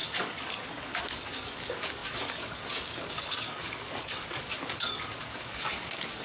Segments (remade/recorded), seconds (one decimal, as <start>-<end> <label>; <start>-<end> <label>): 0.0-6.2 remade